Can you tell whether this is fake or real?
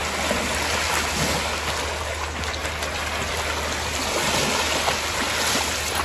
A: real